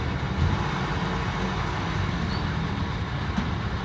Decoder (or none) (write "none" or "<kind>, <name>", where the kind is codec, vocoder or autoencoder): none